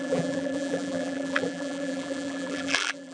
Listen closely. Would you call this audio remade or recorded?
remade